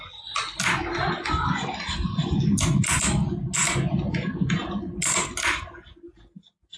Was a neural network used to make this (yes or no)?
no